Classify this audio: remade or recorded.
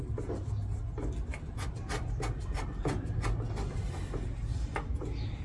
recorded